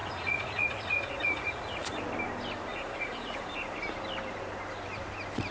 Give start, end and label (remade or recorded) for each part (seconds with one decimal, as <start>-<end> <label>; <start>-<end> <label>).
0.0-2.0 remade; 2.0-2.7 recorded; 2.7-3.4 remade; 3.4-5.5 recorded